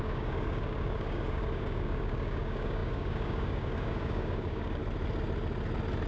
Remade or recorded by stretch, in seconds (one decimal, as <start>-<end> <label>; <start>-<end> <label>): 0.0-4.8 remade; 4.8-6.1 recorded